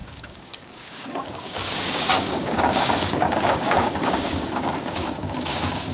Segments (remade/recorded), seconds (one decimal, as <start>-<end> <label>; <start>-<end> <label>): 0.0-5.9 remade